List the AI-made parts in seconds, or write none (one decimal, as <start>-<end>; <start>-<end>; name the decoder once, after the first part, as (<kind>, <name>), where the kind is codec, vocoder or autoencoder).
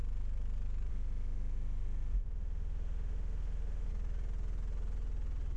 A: 0.9-3.9 (autoencoder, DAC-VAE)